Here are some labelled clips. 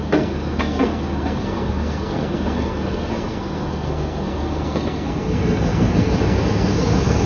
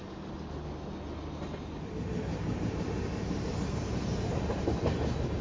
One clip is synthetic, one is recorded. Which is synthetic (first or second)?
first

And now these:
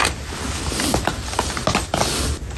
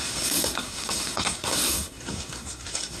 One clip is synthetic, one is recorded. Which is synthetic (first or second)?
second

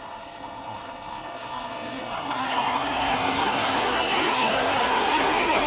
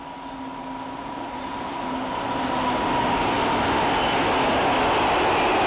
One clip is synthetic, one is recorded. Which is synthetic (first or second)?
first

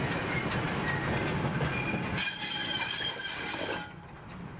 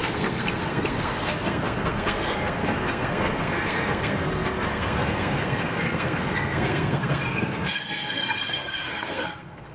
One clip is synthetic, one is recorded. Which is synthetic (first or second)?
second